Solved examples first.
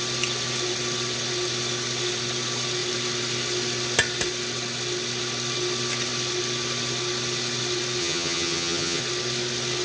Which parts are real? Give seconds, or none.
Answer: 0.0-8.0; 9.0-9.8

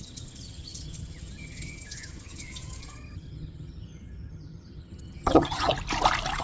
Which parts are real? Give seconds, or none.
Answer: 5.7-6.4

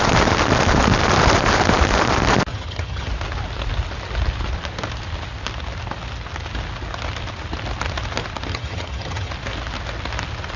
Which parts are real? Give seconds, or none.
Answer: 0.0-2.5; 3.1-8.5; 9.3-10.6

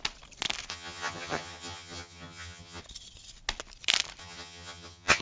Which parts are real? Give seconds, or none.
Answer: 0.0-0.7; 2.8-4.2

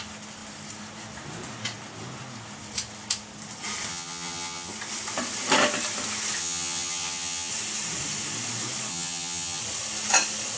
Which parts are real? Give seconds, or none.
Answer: 0.0-3.9; 4.7-6.4; 7.5-8.9; 9.6-10.6

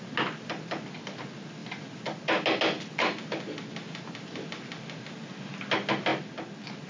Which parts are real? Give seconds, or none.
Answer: 0.0-6.9

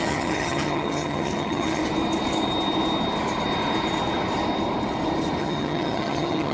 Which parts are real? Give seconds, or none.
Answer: 1.8-5.4

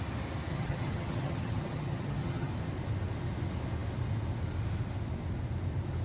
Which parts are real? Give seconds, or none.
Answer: 0.0-0.5; 2.5-6.0